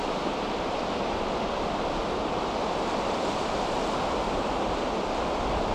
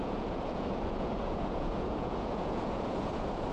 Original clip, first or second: first